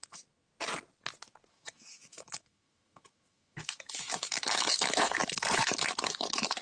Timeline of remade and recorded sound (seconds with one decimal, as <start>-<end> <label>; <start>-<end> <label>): 0.0-0.5 remade; 0.5-1.5 recorded; 1.5-6.6 remade